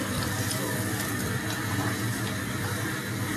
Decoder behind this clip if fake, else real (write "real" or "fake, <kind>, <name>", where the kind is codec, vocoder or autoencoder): real